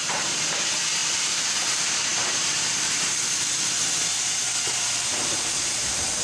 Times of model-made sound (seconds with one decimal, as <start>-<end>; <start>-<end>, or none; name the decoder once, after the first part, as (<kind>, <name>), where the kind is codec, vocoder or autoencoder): 0.0-6.2 (vocoder, BigVGAN v2)